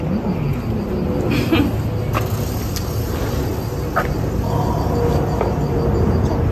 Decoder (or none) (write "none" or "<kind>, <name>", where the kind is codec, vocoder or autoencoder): none